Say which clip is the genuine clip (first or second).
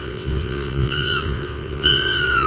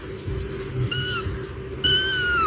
second